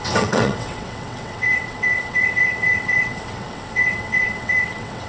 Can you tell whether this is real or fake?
fake